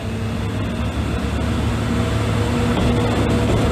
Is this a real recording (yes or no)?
yes